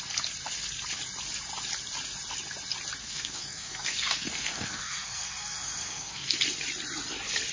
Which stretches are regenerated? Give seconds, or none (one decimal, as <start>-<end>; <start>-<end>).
3.0-6.4